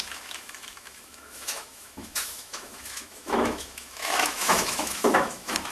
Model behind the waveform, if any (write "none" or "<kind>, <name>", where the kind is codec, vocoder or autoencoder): autoencoder, DAC-VAE